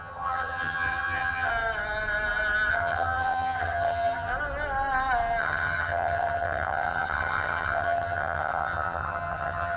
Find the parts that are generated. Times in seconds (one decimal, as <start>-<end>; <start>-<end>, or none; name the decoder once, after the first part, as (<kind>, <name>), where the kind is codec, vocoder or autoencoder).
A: 0.0-1.5 (vocoder, HiFi-GAN); 2.7-4.3; 5.4-9.8